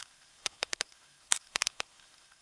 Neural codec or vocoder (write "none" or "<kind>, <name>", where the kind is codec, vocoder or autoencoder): codec, SNAC